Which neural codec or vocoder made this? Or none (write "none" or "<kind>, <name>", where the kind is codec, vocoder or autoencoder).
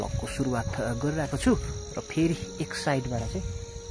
none